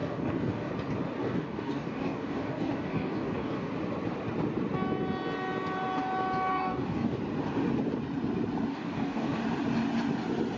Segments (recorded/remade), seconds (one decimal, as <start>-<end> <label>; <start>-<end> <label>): 0.0-0.7 remade; 0.7-1.2 recorded; 1.2-3.7 remade; 3.7-6.5 recorded; 6.5-7.2 remade; 7.2-8.7 recorded; 8.7-9.4 remade; 9.4-10.6 recorded